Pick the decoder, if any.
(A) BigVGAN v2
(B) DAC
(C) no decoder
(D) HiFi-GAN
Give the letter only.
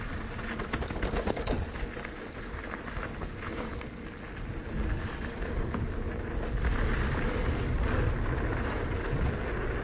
C